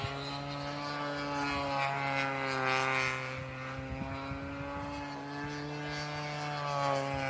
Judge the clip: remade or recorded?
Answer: recorded